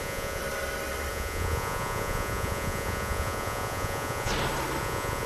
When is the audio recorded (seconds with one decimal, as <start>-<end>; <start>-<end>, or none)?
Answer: 0.4-1.1; 4.3-4.8